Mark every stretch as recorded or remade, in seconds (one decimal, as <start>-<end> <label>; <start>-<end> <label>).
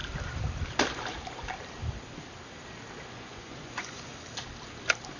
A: 0.0-3.1 recorded; 3.1-4.1 remade; 4.1-5.2 recorded